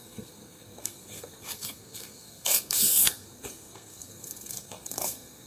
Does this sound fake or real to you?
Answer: fake